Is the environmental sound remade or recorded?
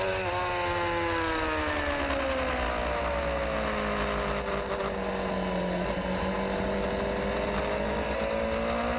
recorded